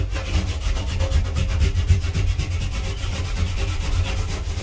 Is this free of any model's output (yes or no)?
yes